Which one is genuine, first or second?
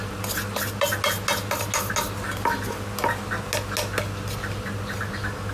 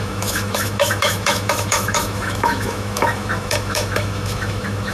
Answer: first